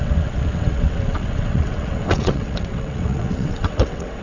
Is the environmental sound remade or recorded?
remade